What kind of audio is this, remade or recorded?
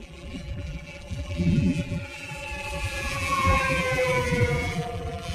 remade